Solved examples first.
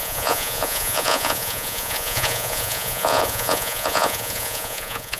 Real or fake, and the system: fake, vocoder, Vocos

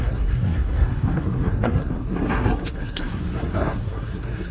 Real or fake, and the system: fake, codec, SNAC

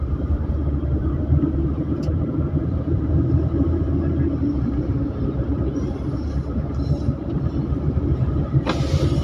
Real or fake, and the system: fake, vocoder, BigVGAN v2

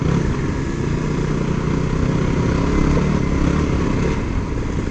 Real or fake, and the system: real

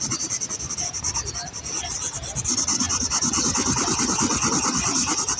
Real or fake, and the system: real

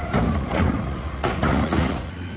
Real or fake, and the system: fake, vocoder, Vocos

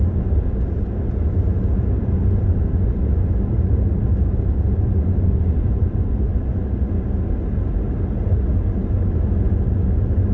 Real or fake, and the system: real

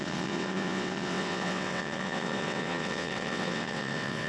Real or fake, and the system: fake, vocoder, WaveNeXt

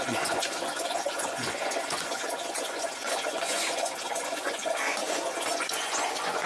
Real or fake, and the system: fake, vocoder, Vocos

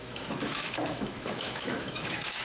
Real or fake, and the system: fake, autoencoder, DAC-VAE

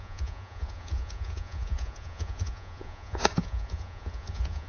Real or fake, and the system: fake, vocoder, Vocos